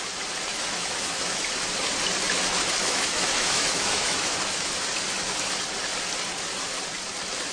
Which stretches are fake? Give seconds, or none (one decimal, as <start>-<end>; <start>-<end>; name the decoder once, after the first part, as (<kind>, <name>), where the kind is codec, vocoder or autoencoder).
0.5-1.5 (autoencoder, DAC-VAE); 2.8-4.7